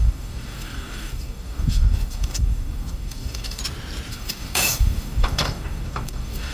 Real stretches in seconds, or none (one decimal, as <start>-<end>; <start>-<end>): 3.6-4.1